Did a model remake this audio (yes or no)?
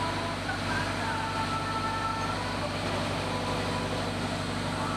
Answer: no